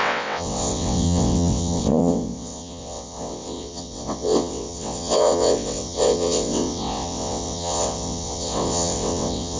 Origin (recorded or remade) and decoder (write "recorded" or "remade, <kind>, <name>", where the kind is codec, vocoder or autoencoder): remade, vocoder, WaveNeXt